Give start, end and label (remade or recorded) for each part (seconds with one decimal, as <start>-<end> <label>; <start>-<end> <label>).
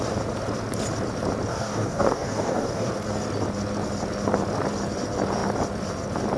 0.0-1.5 recorded; 1.5-2.9 remade; 2.9-6.4 recorded